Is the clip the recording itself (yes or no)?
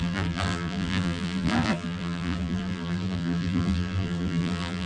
no